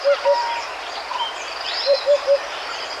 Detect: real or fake fake